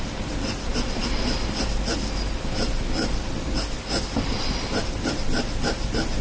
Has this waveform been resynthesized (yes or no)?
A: no